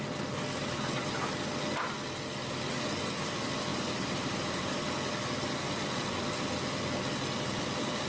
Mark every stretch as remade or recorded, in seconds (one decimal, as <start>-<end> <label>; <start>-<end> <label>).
0.0-0.6 recorded; 0.6-1.2 remade; 1.2-3.7 recorded; 3.7-4.9 remade; 4.9-8.1 recorded